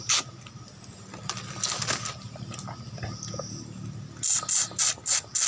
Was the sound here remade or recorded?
recorded